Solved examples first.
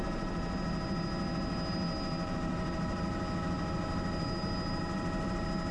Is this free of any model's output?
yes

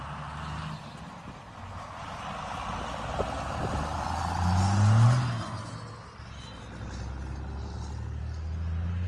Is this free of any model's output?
yes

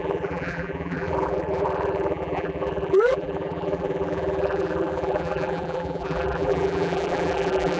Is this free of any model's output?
no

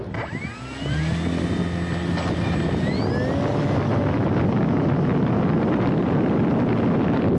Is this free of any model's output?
yes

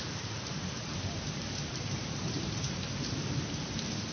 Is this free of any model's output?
no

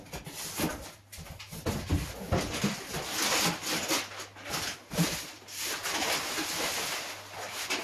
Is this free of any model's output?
yes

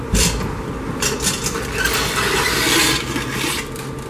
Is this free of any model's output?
yes